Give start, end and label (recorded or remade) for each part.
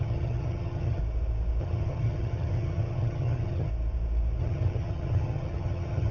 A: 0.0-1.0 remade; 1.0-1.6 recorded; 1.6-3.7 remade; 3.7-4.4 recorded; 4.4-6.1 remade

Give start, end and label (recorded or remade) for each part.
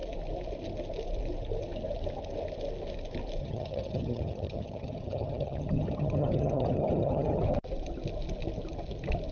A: 0.0-3.4 recorded; 3.4-7.4 remade; 7.4-9.3 recorded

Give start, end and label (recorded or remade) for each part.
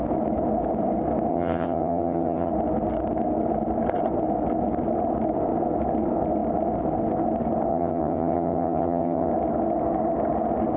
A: 0.0-1.3 recorded; 1.3-2.5 remade; 2.5-7.7 recorded; 7.7-9.3 remade; 9.3-10.8 recorded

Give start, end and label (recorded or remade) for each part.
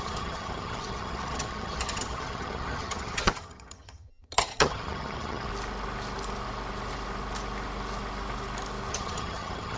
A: 0.0-5.5 remade; 5.5-8.9 recorded; 8.9-9.8 remade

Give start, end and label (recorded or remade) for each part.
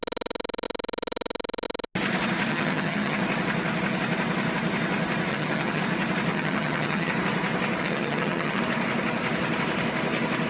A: 0.0-2.5 recorded; 2.5-3.2 remade; 3.2-5.3 recorded; 5.3-5.8 remade; 5.8-6.3 recorded; 6.3-7.1 remade; 7.1-7.8 recorded; 7.8-8.6 remade; 8.6-10.5 recorded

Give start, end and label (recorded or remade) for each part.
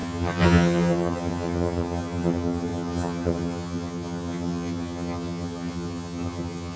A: 0.0-6.8 remade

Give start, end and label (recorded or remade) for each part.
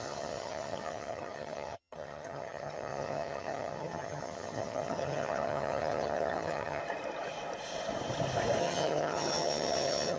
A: 0.0-6.8 remade; 6.8-8.6 recorded; 8.6-10.2 remade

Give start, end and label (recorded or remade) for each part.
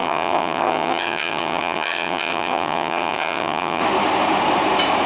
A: 0.0-3.8 remade; 3.8-5.1 recorded